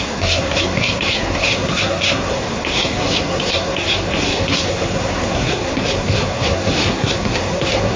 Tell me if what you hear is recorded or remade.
remade